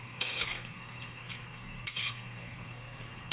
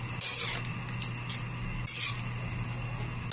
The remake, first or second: first